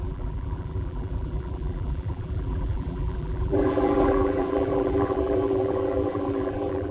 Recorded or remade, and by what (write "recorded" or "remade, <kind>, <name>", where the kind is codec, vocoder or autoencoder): remade, vocoder, BigVGAN v2